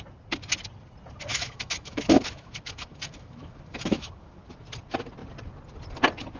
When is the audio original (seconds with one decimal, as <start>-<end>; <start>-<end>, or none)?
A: 0.0-1.3; 4.4-6.4